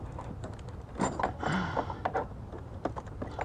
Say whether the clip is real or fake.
fake